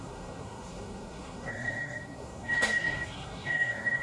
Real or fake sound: fake